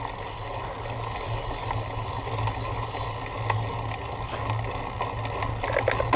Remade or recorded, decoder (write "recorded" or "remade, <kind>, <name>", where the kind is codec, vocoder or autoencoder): recorded